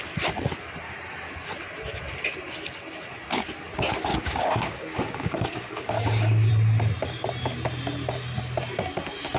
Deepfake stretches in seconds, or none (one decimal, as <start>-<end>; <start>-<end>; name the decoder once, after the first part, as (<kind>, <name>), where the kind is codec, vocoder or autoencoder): 4.1-6.5 (codec, DAC)